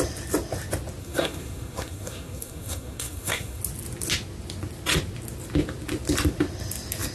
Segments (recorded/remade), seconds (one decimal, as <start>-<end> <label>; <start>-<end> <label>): 0.0-1.0 recorded; 1.0-3.6 remade; 3.6-7.1 recorded